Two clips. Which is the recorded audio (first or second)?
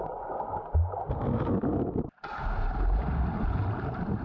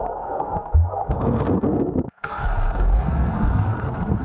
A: first